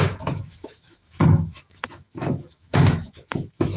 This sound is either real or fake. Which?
fake